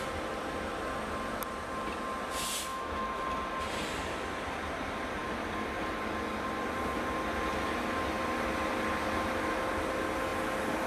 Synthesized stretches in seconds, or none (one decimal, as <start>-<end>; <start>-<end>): 2.7-3.2